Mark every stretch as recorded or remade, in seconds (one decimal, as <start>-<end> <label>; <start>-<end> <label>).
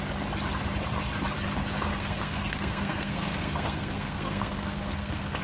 0.0-1.9 recorded; 1.9-5.4 remade